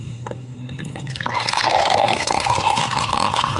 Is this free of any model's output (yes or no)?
no